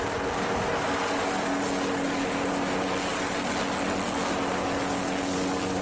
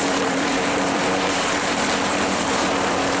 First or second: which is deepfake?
second